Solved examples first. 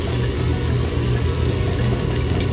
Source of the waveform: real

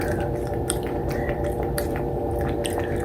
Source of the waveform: fake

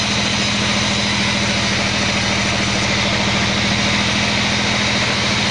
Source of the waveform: real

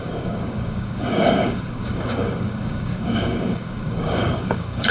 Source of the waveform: fake